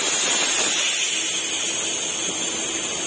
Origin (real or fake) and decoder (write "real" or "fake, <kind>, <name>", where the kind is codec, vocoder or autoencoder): real